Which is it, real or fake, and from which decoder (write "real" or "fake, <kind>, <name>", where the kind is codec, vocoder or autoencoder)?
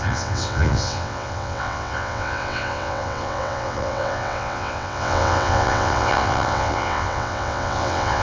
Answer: fake, vocoder, WaveNeXt